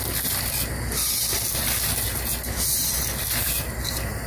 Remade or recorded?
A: recorded